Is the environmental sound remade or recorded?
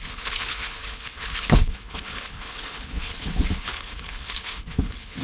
remade